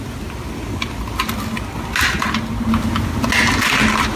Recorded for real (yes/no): yes